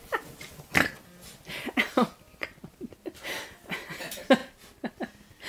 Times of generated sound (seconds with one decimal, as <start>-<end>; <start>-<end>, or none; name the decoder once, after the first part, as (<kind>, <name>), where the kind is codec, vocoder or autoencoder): none